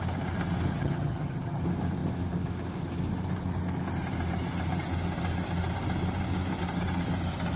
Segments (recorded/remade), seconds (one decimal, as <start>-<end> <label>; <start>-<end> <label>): 0.0-0.7 recorded; 0.7-1.6 remade; 1.6-7.6 recorded